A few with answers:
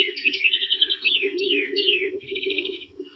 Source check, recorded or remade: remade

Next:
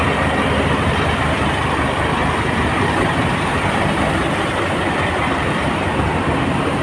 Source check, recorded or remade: recorded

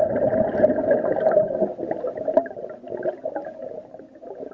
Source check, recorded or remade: recorded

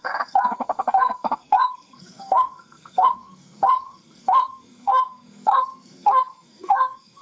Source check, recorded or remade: remade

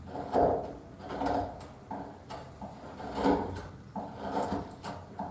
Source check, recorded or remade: recorded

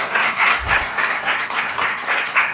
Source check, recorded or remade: remade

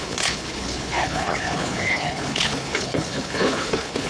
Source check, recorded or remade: remade